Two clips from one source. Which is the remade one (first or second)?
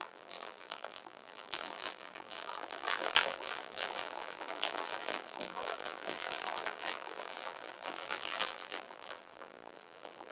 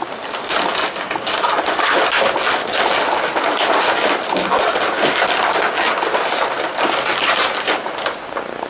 first